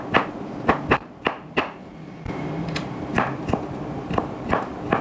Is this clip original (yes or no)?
no